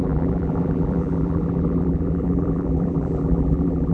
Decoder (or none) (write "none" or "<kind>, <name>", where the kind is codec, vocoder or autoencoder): vocoder, BigVGAN v2